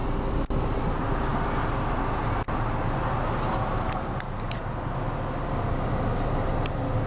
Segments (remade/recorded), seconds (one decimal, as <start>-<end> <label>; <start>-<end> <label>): 0.0-7.1 recorded